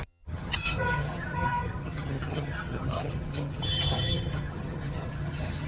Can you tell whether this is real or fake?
fake